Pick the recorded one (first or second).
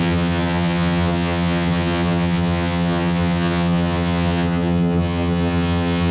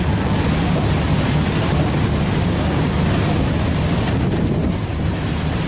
second